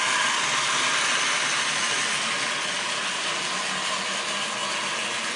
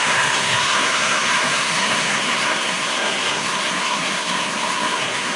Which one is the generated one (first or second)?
second